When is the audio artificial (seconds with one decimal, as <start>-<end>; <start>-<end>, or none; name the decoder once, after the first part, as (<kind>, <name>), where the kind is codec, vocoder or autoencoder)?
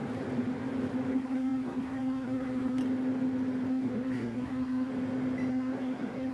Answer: 1.1-2.8 (codec, SNAC); 3.7-4.9; 5.5-6.3